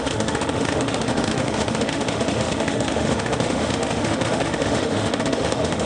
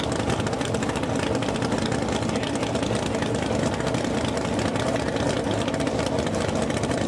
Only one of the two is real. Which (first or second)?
second